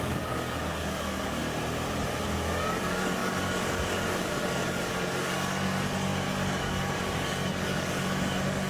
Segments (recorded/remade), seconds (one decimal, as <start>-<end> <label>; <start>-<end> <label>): 0.0-1.4 remade; 1.4-2.2 recorded; 2.2-8.7 remade

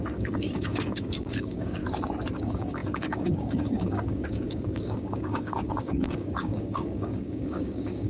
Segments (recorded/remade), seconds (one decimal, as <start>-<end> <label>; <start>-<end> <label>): 0.0-1.8 remade; 1.8-2.4 recorded; 2.4-8.1 remade

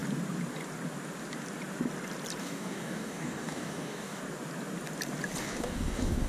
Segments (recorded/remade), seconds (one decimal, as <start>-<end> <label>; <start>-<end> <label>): 0.0-2.4 recorded; 2.4-4.2 remade; 4.2-5.4 recorded; 5.4-6.3 remade

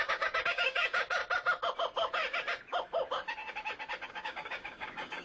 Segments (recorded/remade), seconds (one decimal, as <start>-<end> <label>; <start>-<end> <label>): 0.0-1.2 remade; 1.2-4.1 recorded; 4.1-5.2 remade